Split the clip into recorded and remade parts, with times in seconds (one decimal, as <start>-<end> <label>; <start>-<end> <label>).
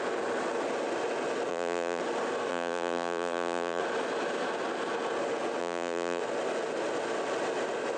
0.0-1.5 recorded; 1.5-2.0 remade; 2.0-2.5 recorded; 2.5-3.8 remade; 3.8-5.6 recorded; 5.6-6.2 remade; 6.2-8.0 recorded